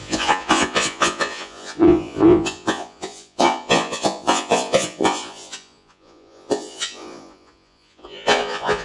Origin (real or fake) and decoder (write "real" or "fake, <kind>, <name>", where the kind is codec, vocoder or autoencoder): fake, vocoder, Vocos